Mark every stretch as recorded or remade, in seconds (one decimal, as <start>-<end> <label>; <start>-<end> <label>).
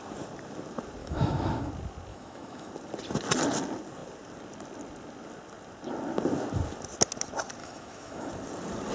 0.0-1.0 recorded; 1.0-1.7 remade; 1.7-2.1 recorded; 2.1-2.7 remade; 2.7-7.6 recorded; 7.6-8.3 remade; 8.3-8.9 recorded